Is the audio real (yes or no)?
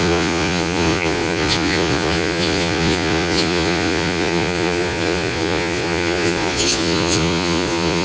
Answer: no